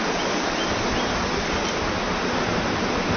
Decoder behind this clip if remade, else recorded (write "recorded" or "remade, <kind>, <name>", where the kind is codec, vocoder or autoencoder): recorded